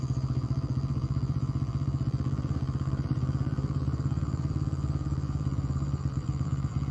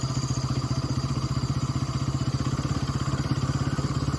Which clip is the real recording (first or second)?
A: second